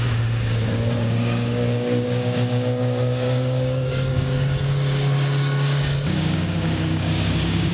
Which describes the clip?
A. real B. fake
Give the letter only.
B